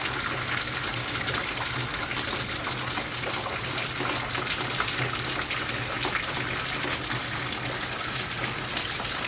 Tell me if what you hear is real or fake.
real